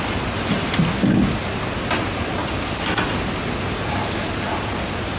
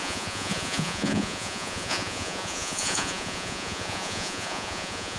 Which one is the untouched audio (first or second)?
first